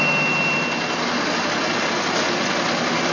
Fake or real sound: real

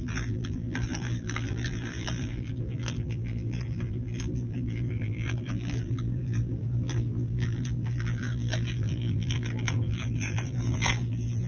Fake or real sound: fake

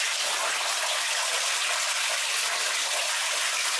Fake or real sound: real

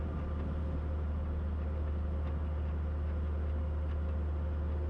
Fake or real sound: real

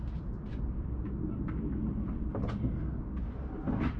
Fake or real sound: real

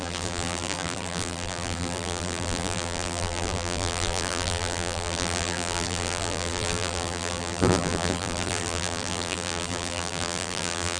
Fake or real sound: fake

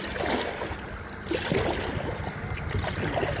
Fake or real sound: real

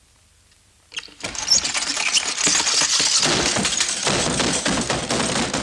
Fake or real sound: real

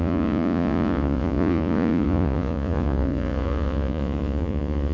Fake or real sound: fake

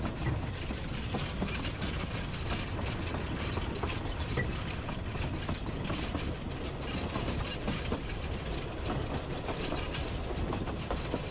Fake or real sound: real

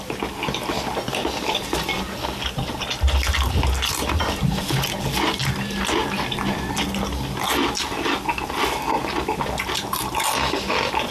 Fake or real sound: real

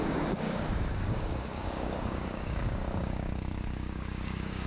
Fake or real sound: fake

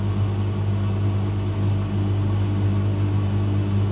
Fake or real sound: real